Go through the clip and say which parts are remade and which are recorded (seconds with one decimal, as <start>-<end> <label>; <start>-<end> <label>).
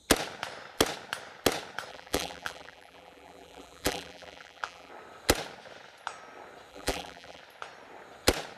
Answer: 0.0-1.9 recorded; 1.9-4.9 remade; 4.9-6.7 recorded; 6.7-7.4 remade; 7.4-8.6 recorded